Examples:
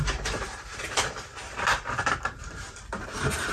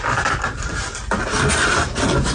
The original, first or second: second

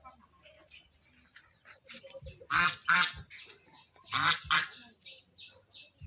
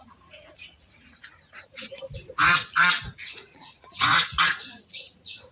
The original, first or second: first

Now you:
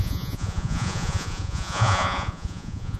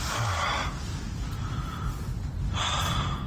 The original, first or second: second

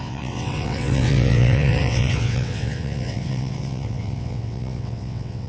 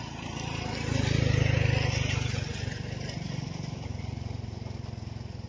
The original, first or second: second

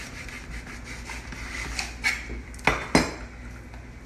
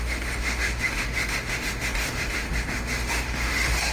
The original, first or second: first